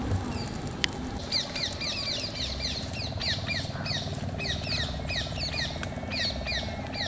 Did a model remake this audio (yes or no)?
no